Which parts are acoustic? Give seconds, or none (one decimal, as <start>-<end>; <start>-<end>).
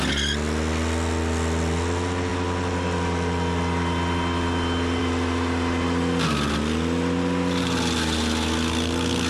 0.0-9.3